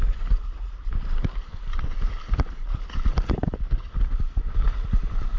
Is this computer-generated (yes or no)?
no